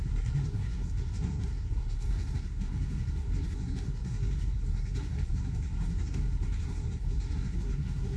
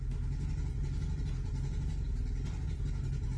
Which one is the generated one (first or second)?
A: first